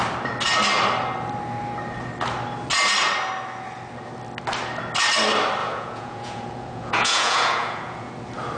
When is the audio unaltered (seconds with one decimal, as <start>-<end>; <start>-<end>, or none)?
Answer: 0.0-5.6; 8.1-8.6